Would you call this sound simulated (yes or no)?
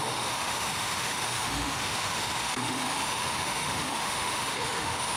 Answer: yes